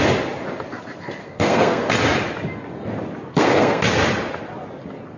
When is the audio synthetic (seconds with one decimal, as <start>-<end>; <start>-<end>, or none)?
1.2-1.9; 3.3-3.8